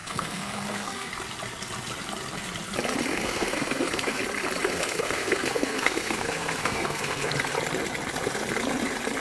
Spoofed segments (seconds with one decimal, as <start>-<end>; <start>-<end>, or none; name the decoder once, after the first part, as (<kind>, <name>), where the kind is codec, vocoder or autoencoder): 0.0-1.1 (codec, SNAC); 3.1-4.2; 4.7-7.3

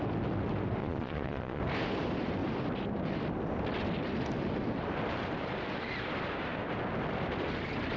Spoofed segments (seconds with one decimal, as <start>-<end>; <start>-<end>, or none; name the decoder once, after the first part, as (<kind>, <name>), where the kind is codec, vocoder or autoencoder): 0.8-1.6 (vocoder, Vocos)

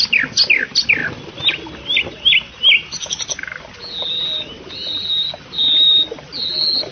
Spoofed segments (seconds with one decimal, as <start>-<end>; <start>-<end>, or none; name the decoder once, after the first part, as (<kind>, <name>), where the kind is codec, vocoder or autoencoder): none

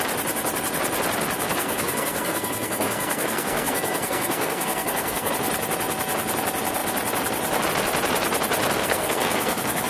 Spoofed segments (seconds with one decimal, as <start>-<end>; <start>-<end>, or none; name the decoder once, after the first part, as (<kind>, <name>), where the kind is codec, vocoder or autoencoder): 1.5-5.3 (codec, SNAC); 8.8-9.9